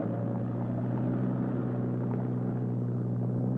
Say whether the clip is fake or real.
real